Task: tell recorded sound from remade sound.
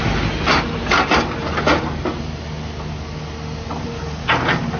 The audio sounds recorded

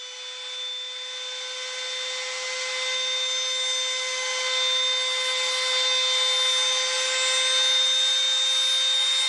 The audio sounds recorded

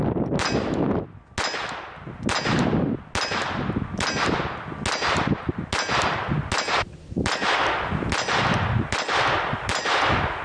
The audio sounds recorded